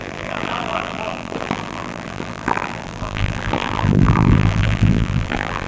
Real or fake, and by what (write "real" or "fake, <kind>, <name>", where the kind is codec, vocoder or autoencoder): fake, vocoder, BigVGAN v2